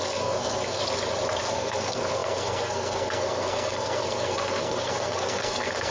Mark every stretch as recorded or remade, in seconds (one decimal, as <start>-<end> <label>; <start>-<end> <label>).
0.0-0.8 remade; 0.8-1.4 recorded; 1.4-5.9 remade